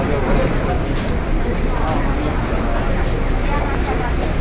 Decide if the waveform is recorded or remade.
recorded